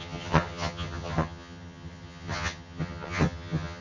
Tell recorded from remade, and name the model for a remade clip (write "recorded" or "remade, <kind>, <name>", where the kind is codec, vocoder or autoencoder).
remade, vocoder, HiFi-GAN